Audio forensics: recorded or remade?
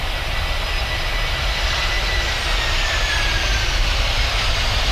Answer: recorded